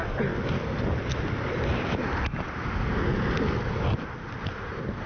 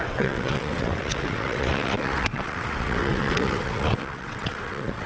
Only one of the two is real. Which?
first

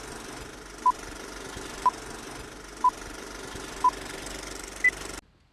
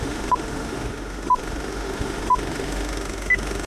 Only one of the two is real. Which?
first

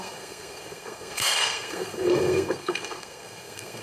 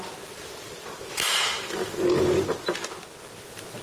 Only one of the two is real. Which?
second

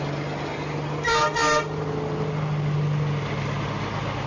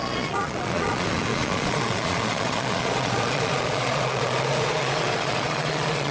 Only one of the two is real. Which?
first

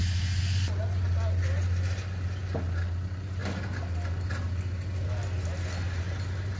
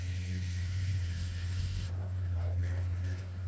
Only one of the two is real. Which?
first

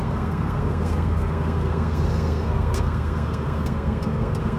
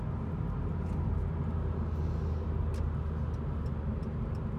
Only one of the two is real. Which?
second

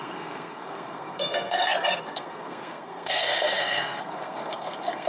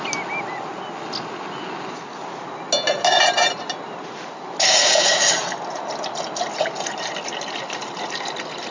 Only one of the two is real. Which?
second